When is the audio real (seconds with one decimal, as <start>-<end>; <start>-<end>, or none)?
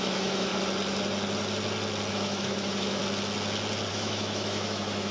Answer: 0.5-2.1; 3.0-3.9